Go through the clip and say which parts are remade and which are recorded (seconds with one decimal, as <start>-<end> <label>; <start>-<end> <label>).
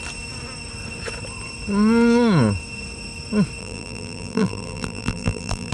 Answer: 0.0-3.6 recorded; 3.6-5.7 remade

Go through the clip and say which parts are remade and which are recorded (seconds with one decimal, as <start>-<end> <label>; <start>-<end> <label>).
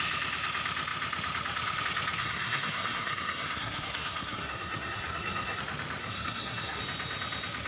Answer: 0.0-2.2 recorded; 2.2-5.6 remade; 5.6-6.0 recorded; 6.0-6.8 remade; 6.8-7.7 recorded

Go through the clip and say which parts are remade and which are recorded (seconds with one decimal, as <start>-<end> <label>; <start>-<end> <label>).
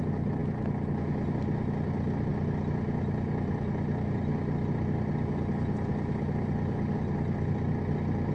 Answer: 0.0-8.3 recorded